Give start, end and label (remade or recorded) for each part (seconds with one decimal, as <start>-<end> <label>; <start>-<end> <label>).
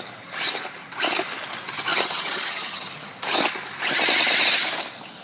0.0-1.9 recorded; 1.9-2.9 remade; 2.9-5.2 recorded